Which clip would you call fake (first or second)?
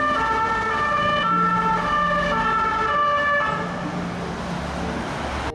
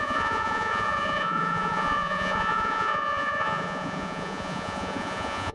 second